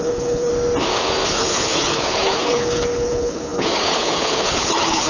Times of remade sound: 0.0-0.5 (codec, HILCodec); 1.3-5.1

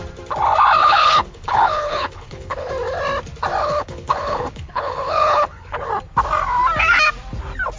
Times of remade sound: 0.8-2.7 (codec, HILCodec); 3.6-5.9

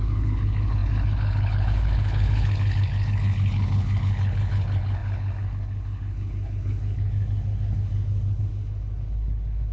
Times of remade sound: 0.0-9.7 (codec, HILCodec)

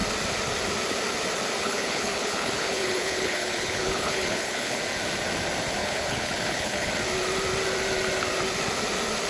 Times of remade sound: 1.6-4.8 (codec, HILCodec); 5.8-6.9

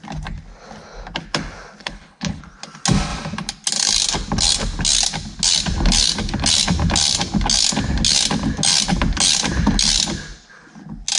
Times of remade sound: 1.8-2.4 (codec, HILCodec)

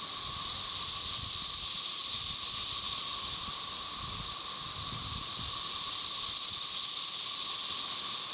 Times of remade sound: none

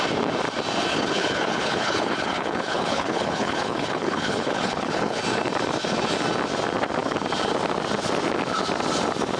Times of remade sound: 0.9-5.2 (codec, HILCodec)

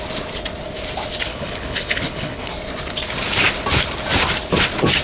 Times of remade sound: 1.3-2.5 (codec, HILCodec)